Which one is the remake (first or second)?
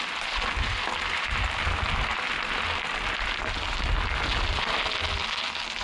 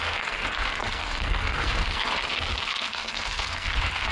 second